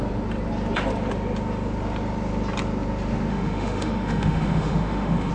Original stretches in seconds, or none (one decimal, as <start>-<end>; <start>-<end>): 0.0-3.3